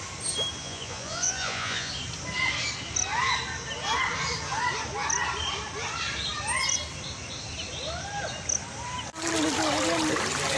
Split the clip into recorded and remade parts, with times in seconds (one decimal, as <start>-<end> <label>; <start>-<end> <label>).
0.0-0.6 recorded; 0.6-1.9 remade; 1.9-10.6 recorded